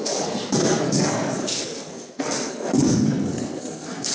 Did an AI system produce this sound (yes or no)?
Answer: yes